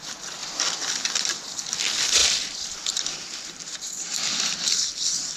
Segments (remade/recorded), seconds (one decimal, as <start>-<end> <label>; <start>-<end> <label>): 0.0-2.2 recorded; 2.2-5.4 remade